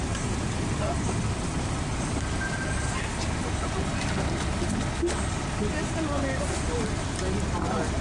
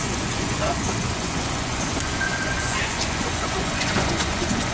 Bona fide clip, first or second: first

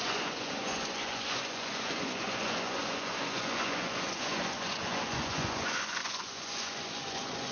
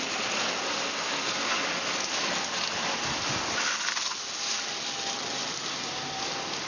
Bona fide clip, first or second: second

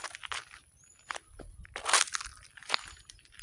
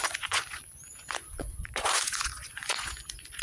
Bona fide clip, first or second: first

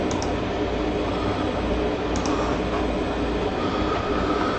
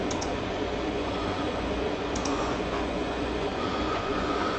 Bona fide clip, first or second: first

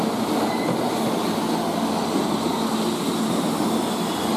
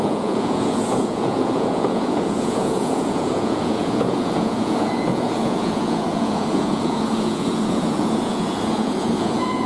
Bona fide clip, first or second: first